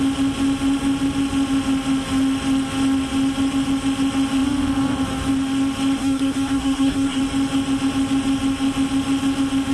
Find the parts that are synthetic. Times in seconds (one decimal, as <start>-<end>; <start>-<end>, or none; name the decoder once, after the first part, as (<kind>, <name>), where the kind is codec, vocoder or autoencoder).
6.0-7.2 (codec, SNAC)